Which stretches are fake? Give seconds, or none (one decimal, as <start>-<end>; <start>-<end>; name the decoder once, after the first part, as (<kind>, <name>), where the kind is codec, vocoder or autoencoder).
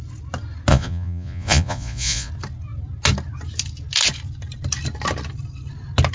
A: 0.7-2.3 (vocoder, Vocos)